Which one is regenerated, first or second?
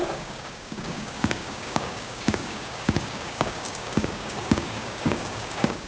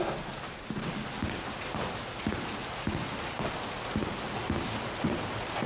first